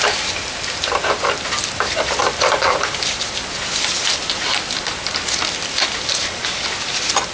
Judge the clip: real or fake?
real